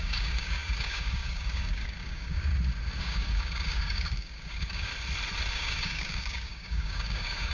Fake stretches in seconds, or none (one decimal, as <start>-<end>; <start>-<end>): 0.0-2.5; 3.0-4.9; 5.5-7.5